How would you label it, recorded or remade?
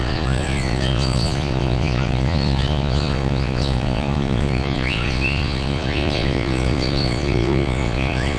remade